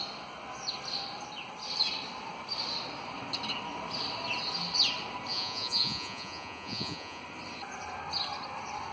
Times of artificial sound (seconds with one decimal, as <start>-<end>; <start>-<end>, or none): 5.3-7.2

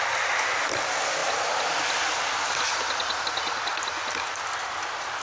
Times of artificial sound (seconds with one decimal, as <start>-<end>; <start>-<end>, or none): none

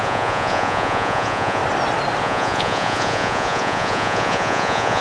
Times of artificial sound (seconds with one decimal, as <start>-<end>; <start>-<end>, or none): 0.0-1.6; 2.2-5.0

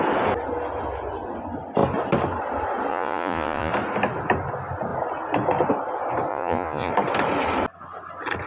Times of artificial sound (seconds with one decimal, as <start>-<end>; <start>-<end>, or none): 2.9-3.7; 6.3-6.9